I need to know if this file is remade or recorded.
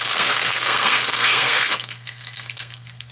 remade